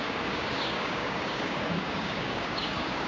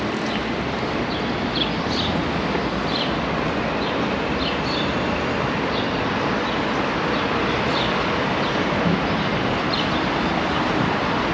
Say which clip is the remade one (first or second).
first